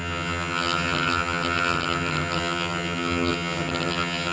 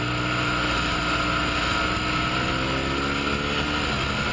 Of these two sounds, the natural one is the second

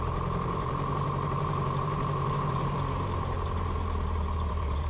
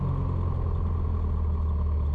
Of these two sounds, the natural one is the second